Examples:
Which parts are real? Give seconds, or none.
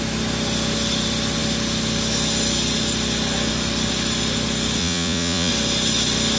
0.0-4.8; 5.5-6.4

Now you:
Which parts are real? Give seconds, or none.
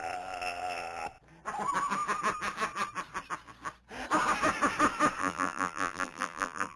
0.0-5.2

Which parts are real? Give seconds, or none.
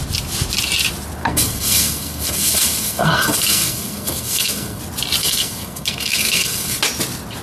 0.0-1.2; 4.8-5.2; 6.8-7.4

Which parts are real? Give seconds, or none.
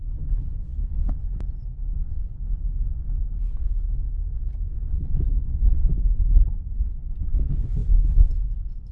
0.0-8.9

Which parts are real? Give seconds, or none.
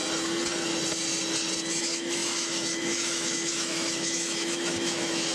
0.0-1.8